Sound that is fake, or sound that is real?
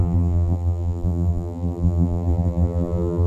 fake